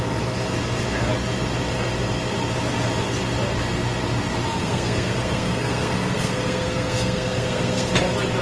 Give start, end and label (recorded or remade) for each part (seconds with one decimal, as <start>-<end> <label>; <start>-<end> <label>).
0.0-4.6 recorded; 4.6-7.9 remade; 7.9-8.4 recorded